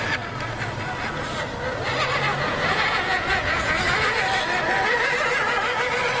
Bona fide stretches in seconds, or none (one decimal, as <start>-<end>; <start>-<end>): 0.0-2.3; 4.2-6.2